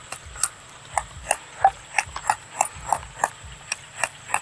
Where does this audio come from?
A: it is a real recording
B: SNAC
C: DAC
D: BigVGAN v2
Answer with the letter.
D